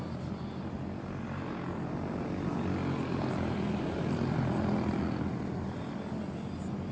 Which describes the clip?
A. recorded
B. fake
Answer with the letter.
A